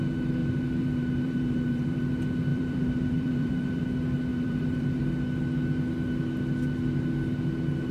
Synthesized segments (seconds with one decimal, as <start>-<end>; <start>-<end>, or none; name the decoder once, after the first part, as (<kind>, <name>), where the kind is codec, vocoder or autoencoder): 0.4-2.1 (vocoder, BigVGAN v2); 2.5-3.8; 4.3-5.0